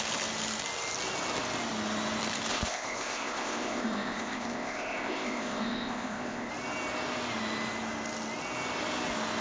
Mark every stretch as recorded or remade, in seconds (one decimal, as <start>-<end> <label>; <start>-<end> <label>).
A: 0.0-2.5 recorded; 2.5-6.5 remade; 6.5-9.4 recorded